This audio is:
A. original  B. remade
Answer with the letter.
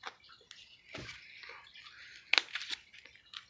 A